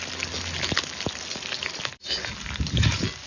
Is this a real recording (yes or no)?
yes